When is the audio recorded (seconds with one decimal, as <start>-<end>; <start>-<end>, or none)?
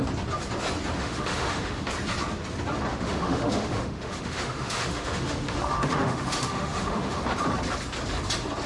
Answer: 0.0-1.0; 1.9-2.9; 7.2-8.7